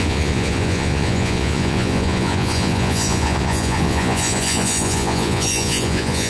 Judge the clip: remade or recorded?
remade